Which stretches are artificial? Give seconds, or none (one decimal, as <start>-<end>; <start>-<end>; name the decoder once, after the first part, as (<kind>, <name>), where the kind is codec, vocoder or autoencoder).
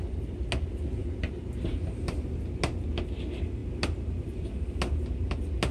none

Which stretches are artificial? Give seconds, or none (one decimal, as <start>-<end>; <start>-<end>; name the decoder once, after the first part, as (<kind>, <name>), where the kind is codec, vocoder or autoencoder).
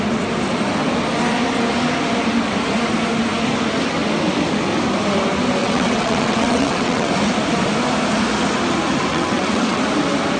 5.6-7.1 (vocoder, WaveNeXt); 9.1-9.8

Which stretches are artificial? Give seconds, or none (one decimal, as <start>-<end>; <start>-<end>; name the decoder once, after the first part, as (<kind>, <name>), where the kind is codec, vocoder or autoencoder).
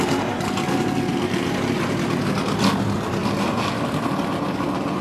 none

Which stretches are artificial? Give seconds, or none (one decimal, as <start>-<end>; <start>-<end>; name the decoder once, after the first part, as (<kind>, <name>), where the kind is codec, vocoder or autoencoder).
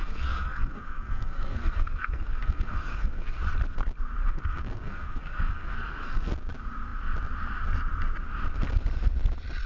0.0-3.4 (codec, SNAC); 4.2-6.3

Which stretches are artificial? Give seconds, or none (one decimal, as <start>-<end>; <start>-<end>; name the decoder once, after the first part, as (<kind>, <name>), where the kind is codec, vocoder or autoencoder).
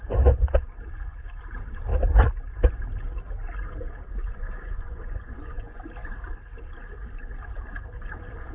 4.2-5.8 (vocoder, Vocos)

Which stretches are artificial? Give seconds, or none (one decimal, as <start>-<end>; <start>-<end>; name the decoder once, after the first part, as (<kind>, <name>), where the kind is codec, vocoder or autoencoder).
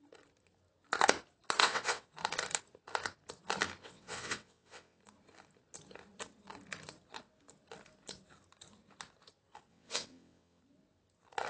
1.6-2.1 (vocoder, WaveNeXt); 3.8-5.0; 9.7-10.6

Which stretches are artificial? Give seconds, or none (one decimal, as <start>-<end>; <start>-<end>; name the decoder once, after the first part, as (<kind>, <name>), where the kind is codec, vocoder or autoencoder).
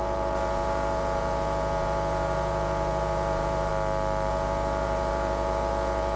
0.0-3.7 (vocoder, Vocos); 4.3-6.2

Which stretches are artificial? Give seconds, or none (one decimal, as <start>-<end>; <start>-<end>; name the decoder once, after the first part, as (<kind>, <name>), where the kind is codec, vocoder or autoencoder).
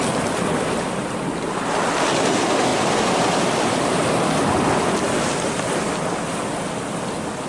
2.7-5.2 (vocoder, BigVGAN v2)